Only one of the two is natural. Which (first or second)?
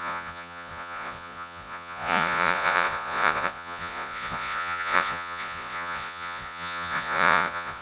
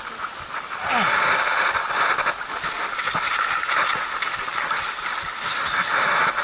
second